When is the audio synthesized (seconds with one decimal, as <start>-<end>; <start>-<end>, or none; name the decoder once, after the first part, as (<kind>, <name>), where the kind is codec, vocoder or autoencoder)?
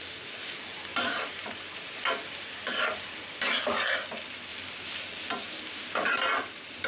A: 0.9-3.5 (vocoder, BigVGAN v2); 4.5-5.3